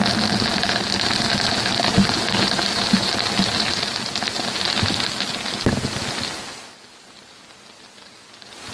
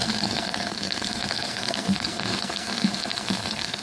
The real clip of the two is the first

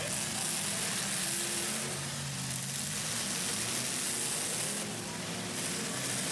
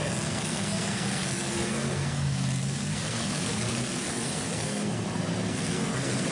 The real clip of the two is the first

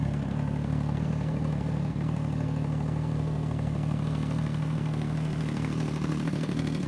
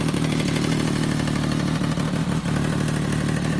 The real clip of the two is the second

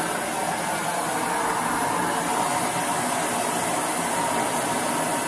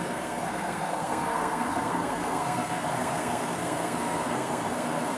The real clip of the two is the first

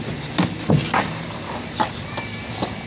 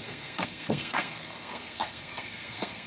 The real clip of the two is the first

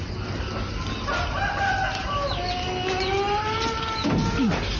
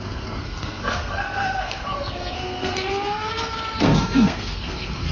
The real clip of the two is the first